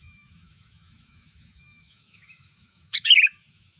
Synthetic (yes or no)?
yes